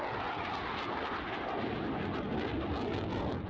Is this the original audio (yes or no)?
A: yes